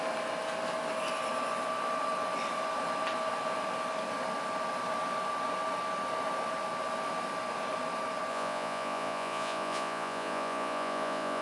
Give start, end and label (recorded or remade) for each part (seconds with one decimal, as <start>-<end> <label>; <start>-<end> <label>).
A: 0.0-8.3 recorded; 8.3-11.4 remade

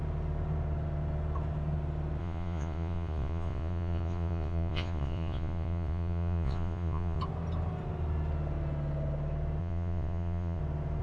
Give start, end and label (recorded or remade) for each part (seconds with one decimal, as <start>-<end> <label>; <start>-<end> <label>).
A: 0.0-2.2 recorded; 2.2-7.2 remade; 7.2-9.6 recorded; 9.6-10.6 remade; 10.6-11.0 recorded